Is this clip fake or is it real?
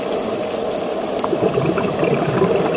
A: real